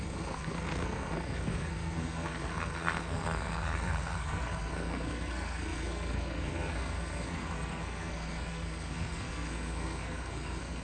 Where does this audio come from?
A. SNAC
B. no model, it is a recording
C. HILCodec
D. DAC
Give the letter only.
A